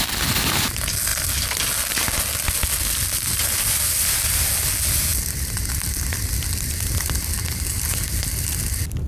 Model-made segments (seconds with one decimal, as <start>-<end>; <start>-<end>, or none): none